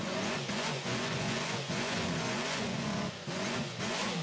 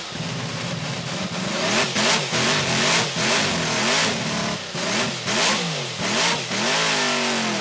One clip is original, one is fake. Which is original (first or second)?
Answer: second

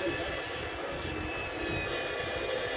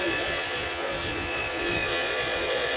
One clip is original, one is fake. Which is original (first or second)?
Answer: first